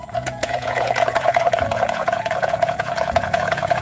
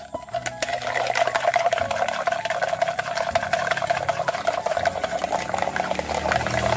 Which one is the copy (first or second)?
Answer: first